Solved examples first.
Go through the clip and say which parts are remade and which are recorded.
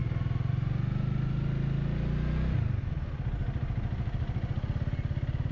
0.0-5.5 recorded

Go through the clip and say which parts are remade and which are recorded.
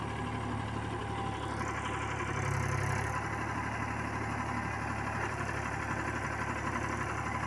0.0-7.5 recorded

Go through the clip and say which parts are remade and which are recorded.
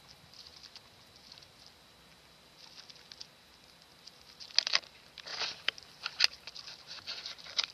0.0-5.3 recorded; 5.3-6.2 remade; 6.2-7.7 recorded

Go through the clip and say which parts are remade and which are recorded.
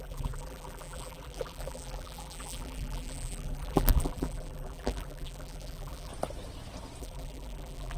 0.0-6.1 remade; 6.1-7.0 recorded; 7.0-8.0 remade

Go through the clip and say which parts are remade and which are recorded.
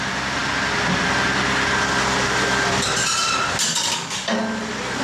0.0-3.7 recorded; 3.7-4.4 remade; 4.4-5.0 recorded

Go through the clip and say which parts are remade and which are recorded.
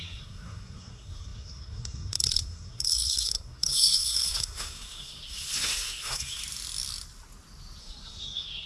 0.0-6.4 remade; 6.4-7.8 recorded; 7.8-8.7 remade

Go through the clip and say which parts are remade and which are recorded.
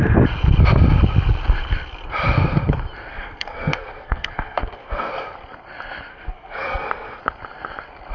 0.0-3.1 recorded; 3.1-5.1 remade; 5.1-6.1 recorded; 6.1-7.2 remade; 7.2-8.1 recorded